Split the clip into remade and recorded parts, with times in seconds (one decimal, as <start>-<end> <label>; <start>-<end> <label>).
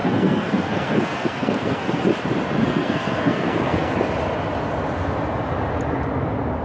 0.0-2.0 remade; 2.0-2.6 recorded; 2.6-3.9 remade; 3.9-6.6 recorded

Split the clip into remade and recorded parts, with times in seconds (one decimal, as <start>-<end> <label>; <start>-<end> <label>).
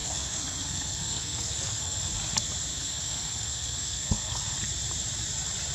0.0-2.1 remade; 2.1-2.7 recorded; 2.7-4.4 remade; 4.4-5.7 recorded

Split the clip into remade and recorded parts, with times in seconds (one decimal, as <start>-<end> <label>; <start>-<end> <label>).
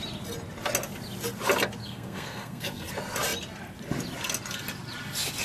0.0-1.8 recorded; 1.8-2.9 remade; 2.9-5.4 recorded